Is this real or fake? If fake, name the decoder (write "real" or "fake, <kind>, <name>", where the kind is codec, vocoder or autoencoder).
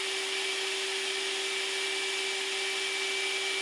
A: real